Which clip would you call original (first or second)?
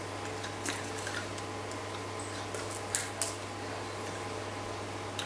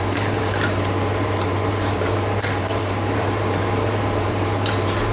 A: first